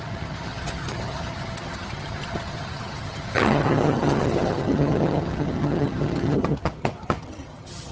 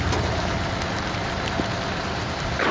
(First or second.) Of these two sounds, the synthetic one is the first